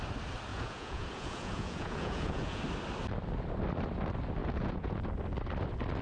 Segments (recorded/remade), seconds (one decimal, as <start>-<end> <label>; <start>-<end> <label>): 0.0-0.5 recorded; 0.5-2.6 remade; 2.6-4.4 recorded; 4.4-5.0 remade; 5.0-6.0 recorded